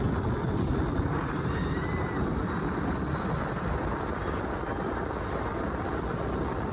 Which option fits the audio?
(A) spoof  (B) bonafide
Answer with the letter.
B